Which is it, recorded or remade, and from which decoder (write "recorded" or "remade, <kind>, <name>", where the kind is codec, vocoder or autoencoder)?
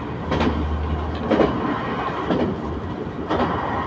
recorded